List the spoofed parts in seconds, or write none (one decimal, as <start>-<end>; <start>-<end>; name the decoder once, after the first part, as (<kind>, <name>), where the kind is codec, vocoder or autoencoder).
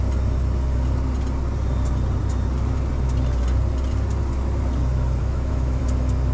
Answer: 5.2-5.8 (autoencoder, DAC-VAE)